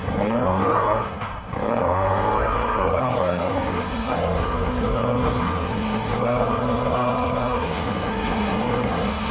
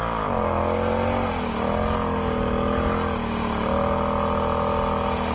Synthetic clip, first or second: first